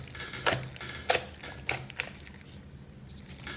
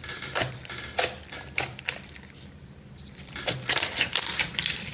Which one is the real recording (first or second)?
first